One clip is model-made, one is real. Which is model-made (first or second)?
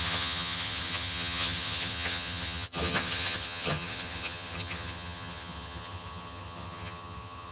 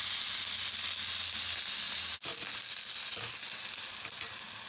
first